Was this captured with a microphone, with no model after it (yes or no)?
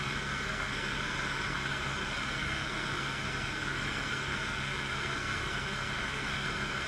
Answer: no